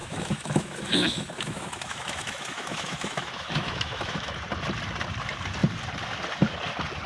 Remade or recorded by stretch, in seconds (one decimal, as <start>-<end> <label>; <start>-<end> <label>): 0.0-4.3 remade; 4.3-7.1 recorded